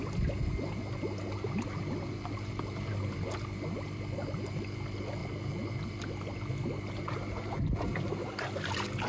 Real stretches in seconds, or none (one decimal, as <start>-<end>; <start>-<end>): 0.0-9.1